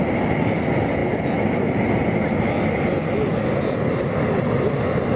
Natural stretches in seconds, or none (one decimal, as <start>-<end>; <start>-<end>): 0.0-5.2